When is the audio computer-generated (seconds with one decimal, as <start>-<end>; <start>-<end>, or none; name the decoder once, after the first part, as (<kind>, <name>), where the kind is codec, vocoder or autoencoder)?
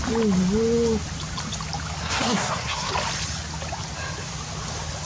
2.0-2.9 (codec, SNAC)